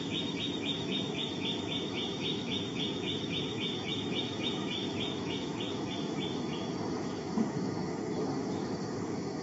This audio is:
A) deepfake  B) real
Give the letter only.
A